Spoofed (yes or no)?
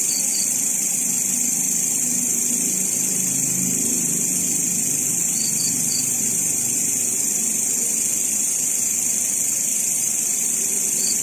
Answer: no